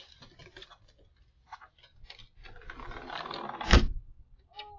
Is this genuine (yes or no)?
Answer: yes